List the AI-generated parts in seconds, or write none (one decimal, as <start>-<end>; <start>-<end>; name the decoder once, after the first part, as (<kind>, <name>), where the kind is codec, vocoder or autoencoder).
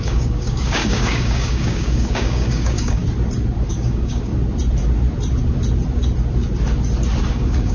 0.0-3.0 (codec, DAC); 3.7-4.3; 7.3-7.7